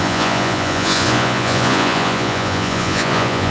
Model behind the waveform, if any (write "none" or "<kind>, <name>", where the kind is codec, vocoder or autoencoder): vocoder, Vocos